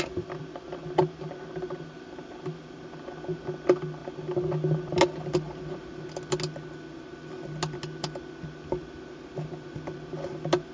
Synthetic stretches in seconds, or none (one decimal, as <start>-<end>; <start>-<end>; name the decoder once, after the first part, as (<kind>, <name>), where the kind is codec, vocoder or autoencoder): none